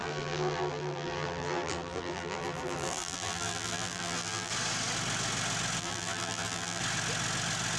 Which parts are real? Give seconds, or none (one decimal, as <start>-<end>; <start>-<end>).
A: 4.5-5.8; 6.8-7.8